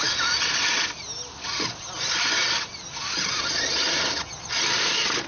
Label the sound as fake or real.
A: real